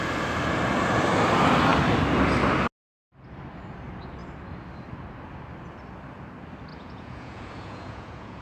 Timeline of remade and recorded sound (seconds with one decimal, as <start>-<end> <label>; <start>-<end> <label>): 0.0-6.7 recorded; 6.7-8.4 remade